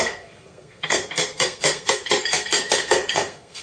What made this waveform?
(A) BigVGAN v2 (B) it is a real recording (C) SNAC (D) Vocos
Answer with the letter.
C